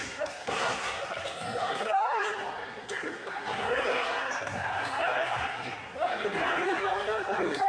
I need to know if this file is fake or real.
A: fake